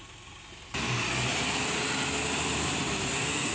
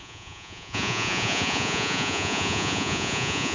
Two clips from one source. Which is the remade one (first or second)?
second